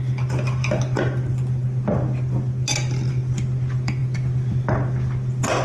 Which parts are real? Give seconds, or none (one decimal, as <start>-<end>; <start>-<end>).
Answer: 0.0-5.6